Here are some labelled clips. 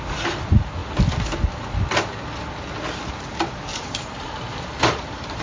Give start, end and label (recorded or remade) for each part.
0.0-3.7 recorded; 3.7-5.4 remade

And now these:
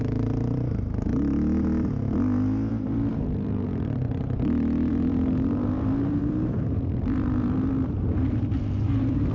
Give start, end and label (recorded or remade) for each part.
0.0-1.1 remade; 1.1-2.7 recorded; 2.7-9.3 remade

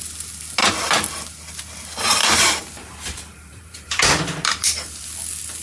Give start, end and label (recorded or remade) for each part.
0.0-2.2 recorded; 2.2-4.0 remade; 4.0-5.6 recorded

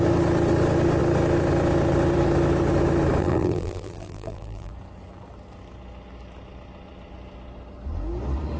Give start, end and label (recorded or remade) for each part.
0.0-3.2 recorded; 3.2-4.7 remade; 4.7-8.6 recorded